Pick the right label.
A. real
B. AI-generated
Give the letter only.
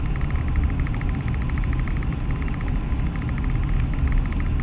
A